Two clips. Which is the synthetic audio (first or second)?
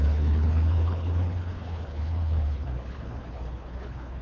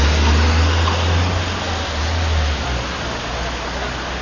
first